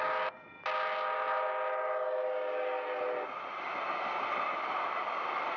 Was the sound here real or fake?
real